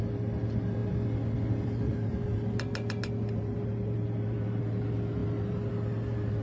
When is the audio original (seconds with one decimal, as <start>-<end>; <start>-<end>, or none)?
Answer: 0.0-6.4